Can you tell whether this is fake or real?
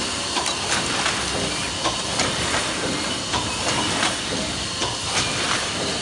real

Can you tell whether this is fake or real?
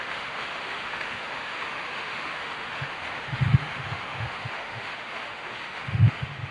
fake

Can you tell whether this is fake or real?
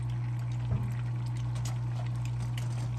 real